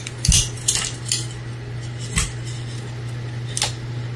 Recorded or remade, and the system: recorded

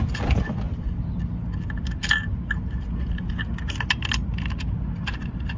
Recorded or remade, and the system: recorded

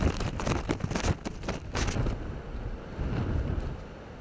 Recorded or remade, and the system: recorded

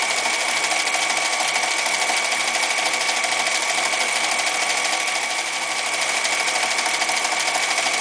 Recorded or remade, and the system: recorded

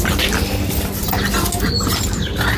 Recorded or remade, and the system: recorded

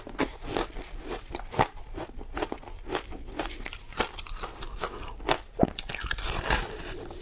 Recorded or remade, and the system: recorded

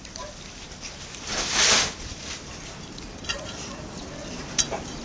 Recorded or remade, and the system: remade, vocoder, BigVGAN v2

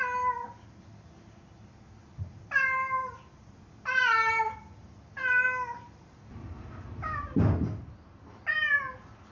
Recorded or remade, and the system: recorded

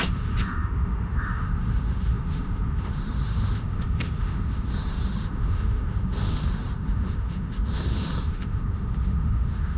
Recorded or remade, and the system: remade, autoencoder, DAC-VAE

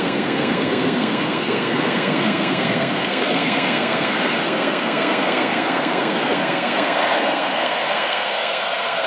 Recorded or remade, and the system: remade, codec, SNAC